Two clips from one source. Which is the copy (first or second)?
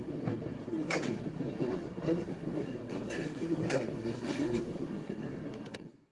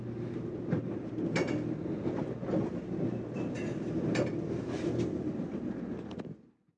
first